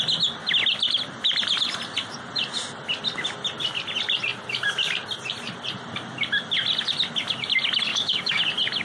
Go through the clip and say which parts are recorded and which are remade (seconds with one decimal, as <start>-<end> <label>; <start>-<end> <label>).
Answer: 0.0-7.9 recorded; 7.9-8.4 remade; 8.4-8.8 recorded